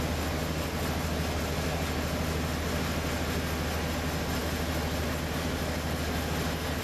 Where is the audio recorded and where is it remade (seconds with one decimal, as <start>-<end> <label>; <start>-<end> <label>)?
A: 0.0-6.8 recorded